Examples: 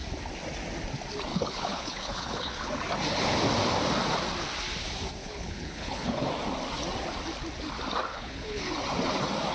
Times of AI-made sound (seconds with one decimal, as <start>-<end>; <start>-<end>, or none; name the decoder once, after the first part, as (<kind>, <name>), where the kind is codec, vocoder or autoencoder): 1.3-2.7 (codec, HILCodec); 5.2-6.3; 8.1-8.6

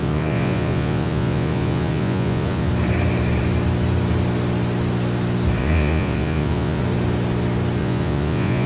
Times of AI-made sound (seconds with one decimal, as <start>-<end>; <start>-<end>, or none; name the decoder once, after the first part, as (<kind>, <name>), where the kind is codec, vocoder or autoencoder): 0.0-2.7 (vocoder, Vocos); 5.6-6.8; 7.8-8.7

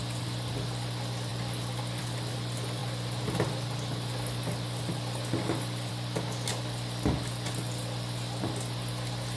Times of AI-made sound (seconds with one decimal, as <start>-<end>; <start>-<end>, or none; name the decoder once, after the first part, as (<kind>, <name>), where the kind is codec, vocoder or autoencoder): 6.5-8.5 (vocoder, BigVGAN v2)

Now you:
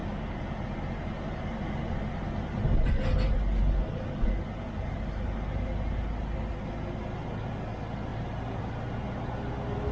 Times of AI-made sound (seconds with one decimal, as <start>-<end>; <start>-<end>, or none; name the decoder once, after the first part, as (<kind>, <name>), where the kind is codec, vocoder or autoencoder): none

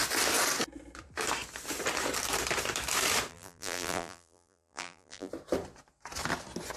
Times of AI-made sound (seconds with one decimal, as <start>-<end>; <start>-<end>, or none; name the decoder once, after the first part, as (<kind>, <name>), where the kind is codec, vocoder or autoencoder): 3.3-5.3 (vocoder, BigVGAN v2)

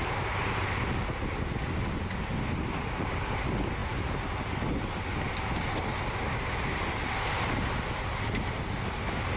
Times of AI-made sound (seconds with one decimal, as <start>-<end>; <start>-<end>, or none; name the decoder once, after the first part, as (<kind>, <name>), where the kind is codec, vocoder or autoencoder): 0.0-0.7 (vocoder, BigVGAN v2)

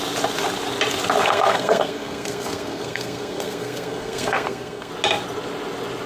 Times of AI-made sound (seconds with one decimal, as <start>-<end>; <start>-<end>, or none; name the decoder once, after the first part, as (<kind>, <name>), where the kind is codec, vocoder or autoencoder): 1.2-4.9 (codec, SNAC)

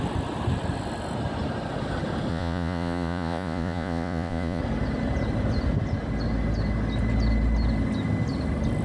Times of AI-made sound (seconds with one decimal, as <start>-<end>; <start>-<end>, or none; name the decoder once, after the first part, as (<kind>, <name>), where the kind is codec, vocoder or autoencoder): 2.3-4.6 (vocoder, Vocos)